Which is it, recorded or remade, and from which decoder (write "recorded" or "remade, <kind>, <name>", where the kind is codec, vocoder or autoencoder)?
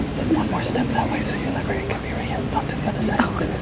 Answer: recorded